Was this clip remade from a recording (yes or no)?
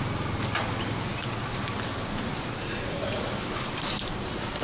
no